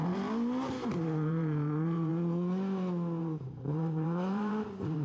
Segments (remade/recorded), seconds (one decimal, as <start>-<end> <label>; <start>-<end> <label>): 0.0-2.1 remade; 2.1-3.2 recorded; 3.2-5.0 remade